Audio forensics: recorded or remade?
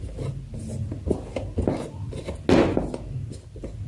recorded